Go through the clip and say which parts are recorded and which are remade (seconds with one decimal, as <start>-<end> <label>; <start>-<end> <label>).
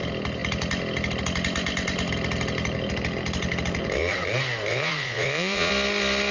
0.0-4.7 recorded; 4.7-5.7 remade; 5.7-6.3 recorded